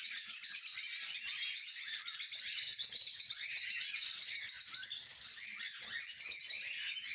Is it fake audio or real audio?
real